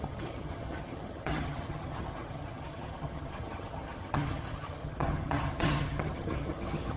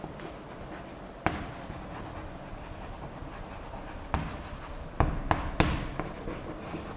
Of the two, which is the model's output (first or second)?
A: first